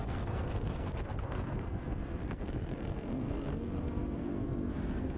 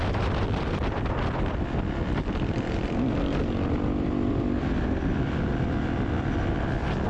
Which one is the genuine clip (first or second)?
second